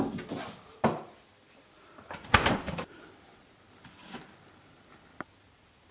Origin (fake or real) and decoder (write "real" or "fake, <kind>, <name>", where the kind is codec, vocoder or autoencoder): fake, vocoder, BigVGAN v2